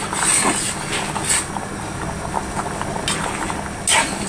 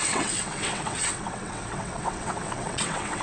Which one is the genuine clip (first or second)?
first